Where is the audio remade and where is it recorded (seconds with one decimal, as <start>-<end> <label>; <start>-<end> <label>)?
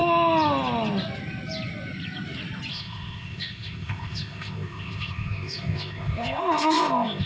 0.0-2.7 recorded; 2.7-7.3 remade